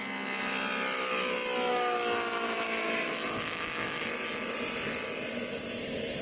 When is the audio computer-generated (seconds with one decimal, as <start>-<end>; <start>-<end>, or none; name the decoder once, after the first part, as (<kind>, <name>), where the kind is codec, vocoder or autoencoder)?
1.7-4.1 (autoencoder, DAC-VAE)